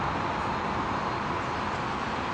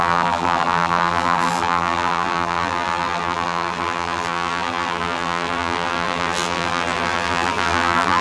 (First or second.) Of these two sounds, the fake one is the second